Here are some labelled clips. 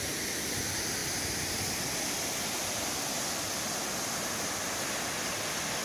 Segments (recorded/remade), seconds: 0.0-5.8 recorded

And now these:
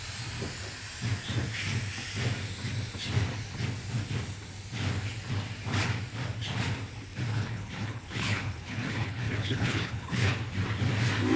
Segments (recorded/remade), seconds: 0.0-7.3 recorded; 7.3-10.3 remade; 10.3-11.4 recorded

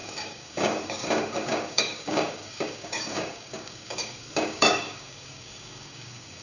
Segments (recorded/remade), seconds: 0.0-6.4 remade

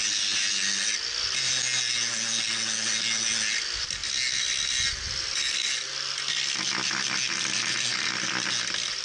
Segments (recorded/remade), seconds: 0.0-9.0 recorded

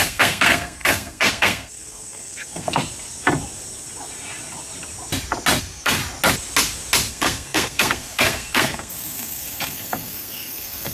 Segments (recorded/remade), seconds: 0.0-2.8 remade; 2.8-5.6 recorded; 5.6-6.0 remade; 6.0-7.1 recorded; 7.1-10.9 remade